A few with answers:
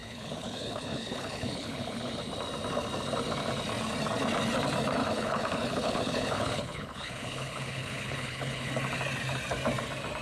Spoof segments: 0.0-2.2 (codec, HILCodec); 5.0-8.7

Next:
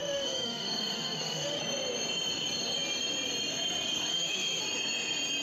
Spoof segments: 0.0-1.6 (autoencoder, DAC-VAE); 4.1-4.6

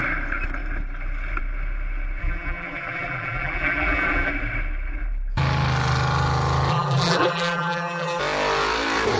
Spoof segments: 2.2-4.3 (vocoder, BigVGAN v2); 6.7-8.2

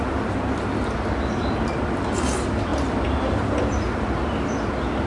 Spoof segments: none

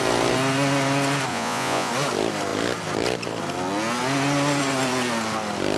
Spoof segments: 1.3-1.9 (vocoder, Vocos)